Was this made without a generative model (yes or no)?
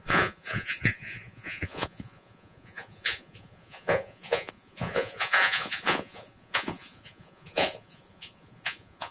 no